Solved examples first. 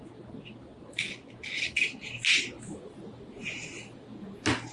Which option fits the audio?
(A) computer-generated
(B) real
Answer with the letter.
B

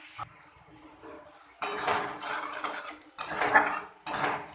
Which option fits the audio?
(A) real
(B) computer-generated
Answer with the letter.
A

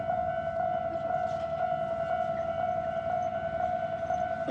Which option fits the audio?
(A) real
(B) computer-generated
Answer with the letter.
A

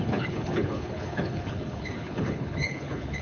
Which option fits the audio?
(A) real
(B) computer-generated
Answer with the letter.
B